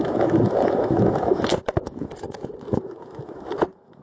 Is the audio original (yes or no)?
no